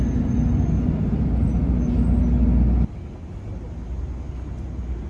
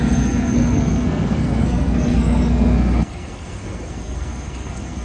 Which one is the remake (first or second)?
second